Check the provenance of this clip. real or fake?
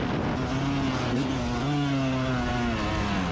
real